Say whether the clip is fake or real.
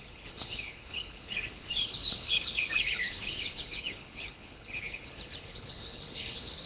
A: fake